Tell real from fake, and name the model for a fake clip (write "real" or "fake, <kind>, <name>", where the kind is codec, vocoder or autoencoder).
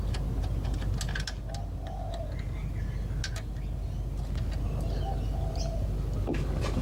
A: real